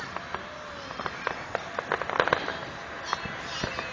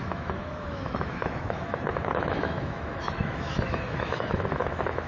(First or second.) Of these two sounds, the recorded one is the first